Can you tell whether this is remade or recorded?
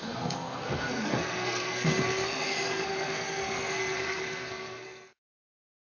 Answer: remade